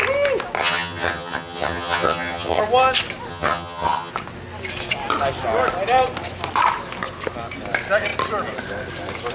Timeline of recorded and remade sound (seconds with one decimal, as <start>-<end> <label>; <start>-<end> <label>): 0.0-0.6 recorded; 0.6-2.6 remade; 2.6-3.3 recorded; 3.3-4.1 remade; 4.1-9.3 recorded